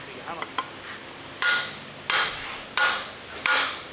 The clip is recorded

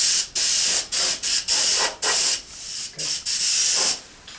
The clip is recorded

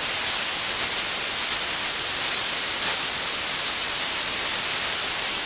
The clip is recorded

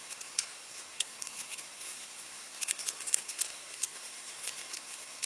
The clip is remade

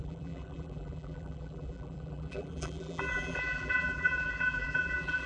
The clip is remade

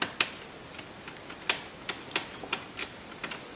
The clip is recorded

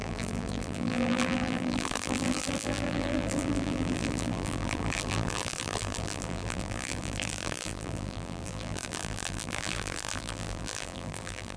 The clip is remade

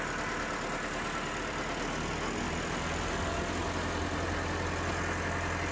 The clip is recorded